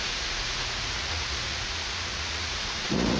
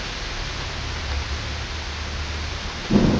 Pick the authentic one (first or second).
second